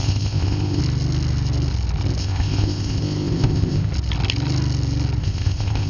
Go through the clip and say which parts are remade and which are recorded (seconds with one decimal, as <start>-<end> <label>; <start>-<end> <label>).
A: 0.0-0.8 remade; 0.8-2.2 recorded; 2.2-3.9 remade; 3.9-5.2 recorded; 5.2-5.9 remade